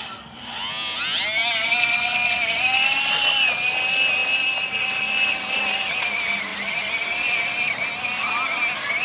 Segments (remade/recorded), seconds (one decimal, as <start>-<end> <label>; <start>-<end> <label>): 0.0-9.0 recorded